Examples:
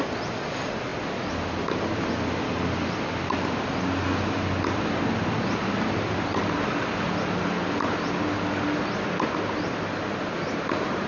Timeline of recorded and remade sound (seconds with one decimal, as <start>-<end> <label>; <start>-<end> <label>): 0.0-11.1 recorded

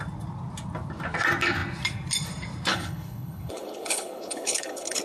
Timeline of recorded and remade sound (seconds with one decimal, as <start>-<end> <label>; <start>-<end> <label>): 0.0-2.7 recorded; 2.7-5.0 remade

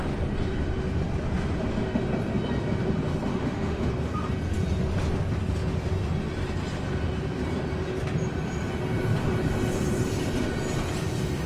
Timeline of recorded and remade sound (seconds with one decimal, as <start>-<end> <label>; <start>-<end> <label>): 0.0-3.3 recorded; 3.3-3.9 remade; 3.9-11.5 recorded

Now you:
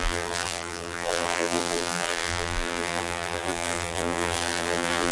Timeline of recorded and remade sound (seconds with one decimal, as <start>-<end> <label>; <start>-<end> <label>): 0.0-5.1 remade